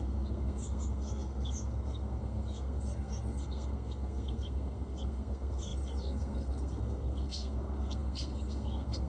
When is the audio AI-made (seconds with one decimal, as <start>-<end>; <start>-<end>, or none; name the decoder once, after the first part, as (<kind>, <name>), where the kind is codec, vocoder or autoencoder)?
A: 0.0-9.1 (codec, SNAC)